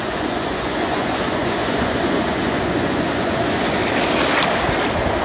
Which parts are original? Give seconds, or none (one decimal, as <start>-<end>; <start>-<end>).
3.8-5.2